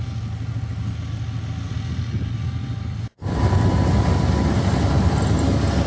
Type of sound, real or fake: real